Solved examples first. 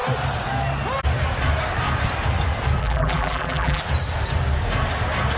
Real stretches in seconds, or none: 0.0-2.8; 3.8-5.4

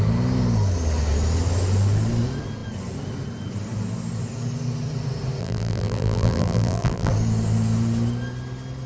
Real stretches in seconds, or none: 0.0-5.4; 7.1-8.9

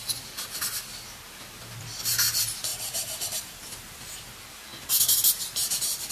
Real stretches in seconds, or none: 0.0-2.7; 4.2-6.1

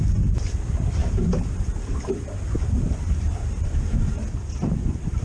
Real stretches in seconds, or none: 0.0-1.0; 4.1-5.2